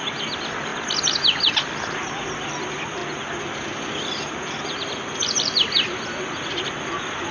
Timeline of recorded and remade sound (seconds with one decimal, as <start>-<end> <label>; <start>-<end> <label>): 0.0-0.7 remade; 0.7-1.5 recorded; 1.5-7.3 remade

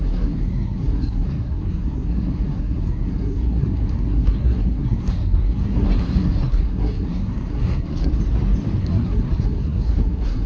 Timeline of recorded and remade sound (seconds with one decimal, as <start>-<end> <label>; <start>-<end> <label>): 0.0-8.1 remade; 8.1-8.8 recorded; 8.8-10.5 remade

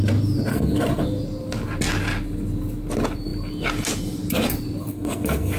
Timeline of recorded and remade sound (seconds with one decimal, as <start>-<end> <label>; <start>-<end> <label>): 0.0-0.5 recorded; 0.5-1.0 remade; 1.0-4.9 recorded; 4.9-5.6 remade

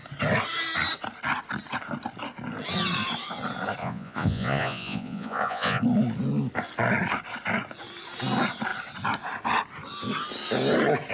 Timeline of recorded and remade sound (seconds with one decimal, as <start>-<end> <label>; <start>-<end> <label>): 0.0-3.8 recorded; 3.8-5.8 remade; 5.8-11.1 recorded

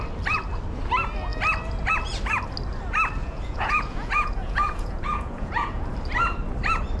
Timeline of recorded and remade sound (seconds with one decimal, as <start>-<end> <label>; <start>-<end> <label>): 0.0-3.2 recorded; 3.2-5.9 remade; 5.9-7.0 recorded